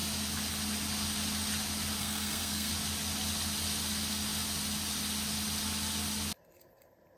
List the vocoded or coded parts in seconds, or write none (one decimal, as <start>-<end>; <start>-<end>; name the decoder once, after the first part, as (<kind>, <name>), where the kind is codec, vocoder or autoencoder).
2.0-2.7 (codec, SNAC)